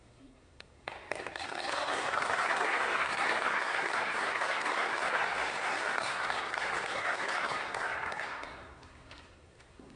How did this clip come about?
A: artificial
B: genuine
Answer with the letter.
A